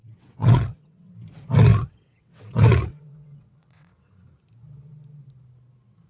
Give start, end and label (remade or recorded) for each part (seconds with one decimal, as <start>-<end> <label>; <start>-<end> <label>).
0.0-1.1 remade; 1.1-1.7 recorded; 1.7-4.0 remade; 4.0-6.1 recorded